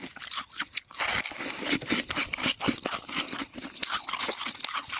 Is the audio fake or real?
real